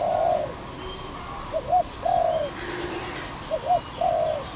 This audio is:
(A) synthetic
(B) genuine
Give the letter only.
B